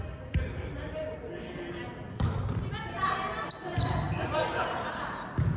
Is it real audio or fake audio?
real